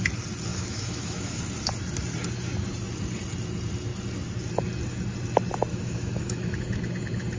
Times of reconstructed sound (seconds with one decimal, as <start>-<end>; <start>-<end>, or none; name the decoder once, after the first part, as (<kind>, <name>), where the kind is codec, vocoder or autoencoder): 0.5-1.4 (autoencoder, DAC-VAE); 5.7-6.6

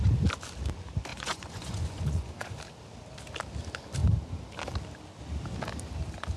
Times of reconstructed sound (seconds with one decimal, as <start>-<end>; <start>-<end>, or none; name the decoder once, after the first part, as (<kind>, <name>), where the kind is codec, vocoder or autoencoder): 1.1-2.6 (vocoder, Vocos)

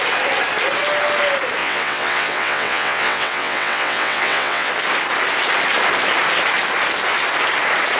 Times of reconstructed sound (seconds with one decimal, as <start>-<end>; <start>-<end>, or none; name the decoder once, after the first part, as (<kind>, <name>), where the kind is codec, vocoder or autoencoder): 1.6-4.7 (vocoder, WaveNeXt)

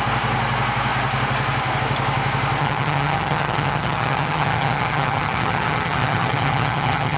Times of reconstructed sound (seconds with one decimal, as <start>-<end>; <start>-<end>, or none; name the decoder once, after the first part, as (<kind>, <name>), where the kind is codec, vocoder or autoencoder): 2.6-7.2 (vocoder, HiFi-GAN)

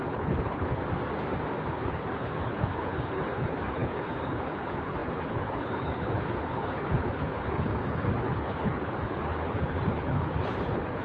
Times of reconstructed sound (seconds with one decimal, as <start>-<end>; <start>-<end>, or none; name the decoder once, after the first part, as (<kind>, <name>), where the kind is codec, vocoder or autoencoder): 0.0-0.8 (codec, HILCodec); 1.7-11.0

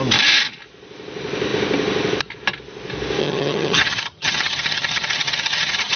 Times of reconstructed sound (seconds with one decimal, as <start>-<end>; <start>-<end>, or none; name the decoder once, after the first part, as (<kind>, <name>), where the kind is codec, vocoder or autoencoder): 3.2-6.0 (vocoder, HiFi-GAN)